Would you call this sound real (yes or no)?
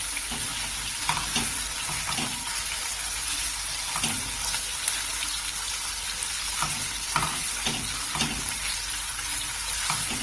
yes